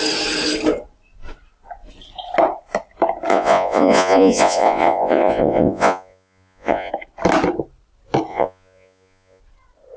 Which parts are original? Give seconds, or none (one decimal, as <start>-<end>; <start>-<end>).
0.0-3.3; 6.9-8.3; 9.4-10.0